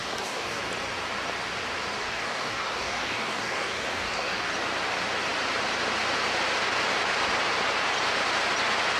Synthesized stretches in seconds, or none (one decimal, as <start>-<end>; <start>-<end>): 0.0-0.6; 2.0-4.5